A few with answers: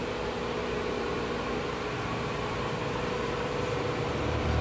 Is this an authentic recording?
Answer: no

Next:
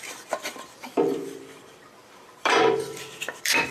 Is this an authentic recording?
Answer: no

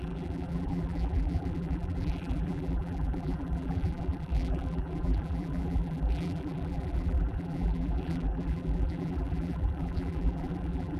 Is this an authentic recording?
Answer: no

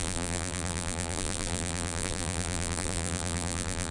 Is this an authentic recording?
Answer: no